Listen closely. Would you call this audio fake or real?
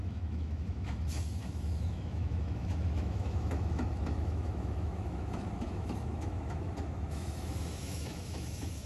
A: fake